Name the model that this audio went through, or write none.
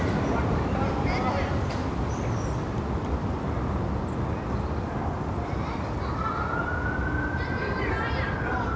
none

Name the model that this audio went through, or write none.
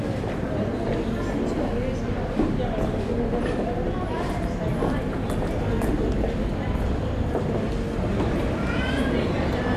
none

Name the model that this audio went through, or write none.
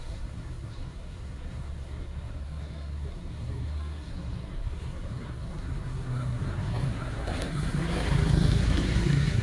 codec, SNAC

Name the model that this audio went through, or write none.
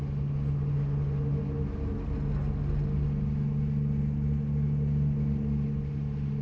none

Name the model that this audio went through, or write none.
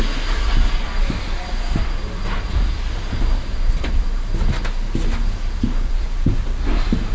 none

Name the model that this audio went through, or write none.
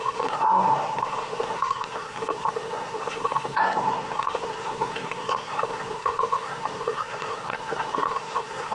codec, SNAC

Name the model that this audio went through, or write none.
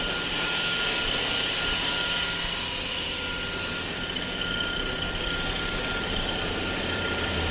none